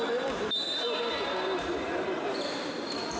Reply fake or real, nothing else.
real